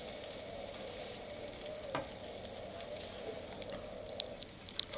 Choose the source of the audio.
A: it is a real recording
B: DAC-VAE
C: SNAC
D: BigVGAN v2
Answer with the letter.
A